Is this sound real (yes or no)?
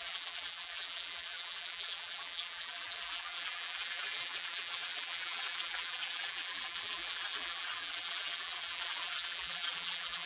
no